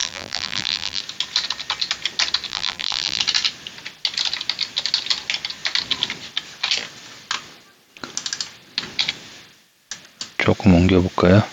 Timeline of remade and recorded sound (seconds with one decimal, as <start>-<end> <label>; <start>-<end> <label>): 0.0-1.0 remade; 1.0-2.5 recorded; 2.5-3.2 remade; 3.2-11.5 recorded